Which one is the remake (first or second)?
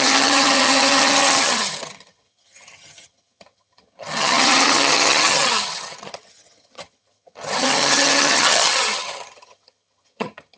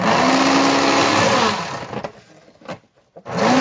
first